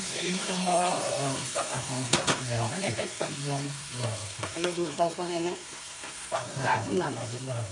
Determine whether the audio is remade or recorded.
remade